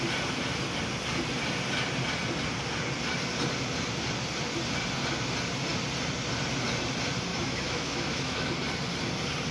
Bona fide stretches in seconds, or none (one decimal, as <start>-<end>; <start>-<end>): 0.0-7.3; 8.5-9.5